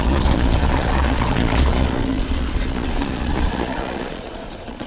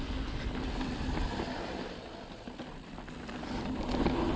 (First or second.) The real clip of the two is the second